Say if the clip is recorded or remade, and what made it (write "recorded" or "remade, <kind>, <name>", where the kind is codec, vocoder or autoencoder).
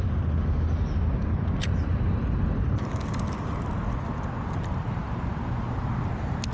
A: recorded